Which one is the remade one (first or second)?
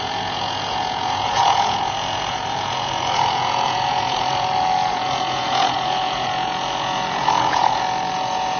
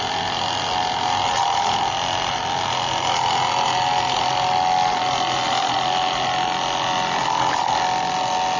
first